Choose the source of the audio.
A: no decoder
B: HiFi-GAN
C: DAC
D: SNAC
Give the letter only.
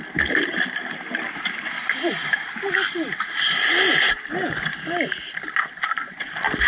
A